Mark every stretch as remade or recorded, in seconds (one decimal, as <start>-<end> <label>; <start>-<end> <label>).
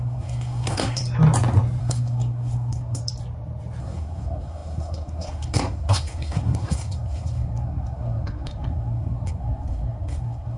0.0-1.0 remade; 1.0-1.8 recorded; 1.8-3.0 remade; 3.0-3.8 recorded; 3.8-10.6 remade